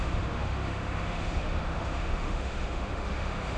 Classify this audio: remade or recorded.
remade